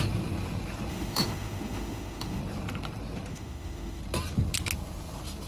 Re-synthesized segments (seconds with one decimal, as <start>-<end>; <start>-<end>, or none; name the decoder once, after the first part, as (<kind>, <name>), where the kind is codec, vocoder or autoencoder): 0.9-2.4 (autoencoder, DAC-VAE); 3.3-4.0